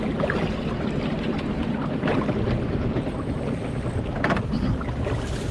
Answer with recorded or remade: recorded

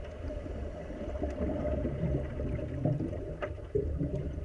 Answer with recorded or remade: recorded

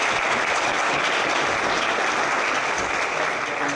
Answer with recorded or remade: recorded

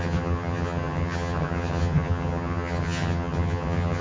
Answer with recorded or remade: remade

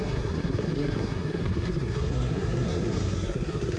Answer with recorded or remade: remade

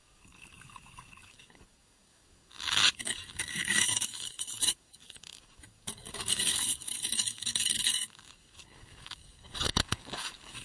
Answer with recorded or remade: remade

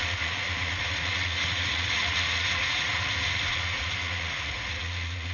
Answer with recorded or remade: remade